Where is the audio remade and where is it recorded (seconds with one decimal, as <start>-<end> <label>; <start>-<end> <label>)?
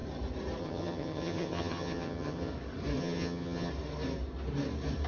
0.0-0.6 recorded; 0.6-2.5 remade; 2.5-3.0 recorded; 3.0-3.7 remade; 3.7-5.1 recorded